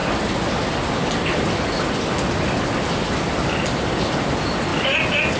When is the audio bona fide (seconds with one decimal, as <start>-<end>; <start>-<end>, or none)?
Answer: 0.0-5.4